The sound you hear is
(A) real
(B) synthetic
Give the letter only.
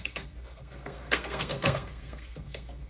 B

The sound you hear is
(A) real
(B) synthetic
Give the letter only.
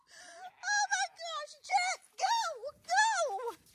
A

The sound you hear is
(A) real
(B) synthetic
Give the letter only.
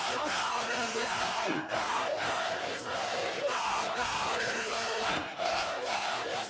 B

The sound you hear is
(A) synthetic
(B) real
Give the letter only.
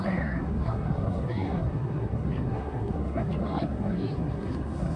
A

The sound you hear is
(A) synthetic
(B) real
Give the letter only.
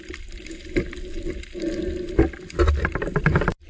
B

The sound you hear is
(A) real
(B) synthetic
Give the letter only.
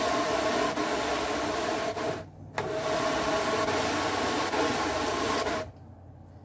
A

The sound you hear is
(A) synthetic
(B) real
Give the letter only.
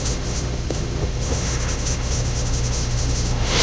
A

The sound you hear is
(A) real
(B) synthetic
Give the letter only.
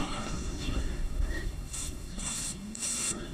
B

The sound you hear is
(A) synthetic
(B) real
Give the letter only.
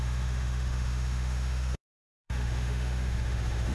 A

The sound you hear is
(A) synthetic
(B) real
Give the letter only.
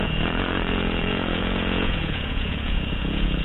A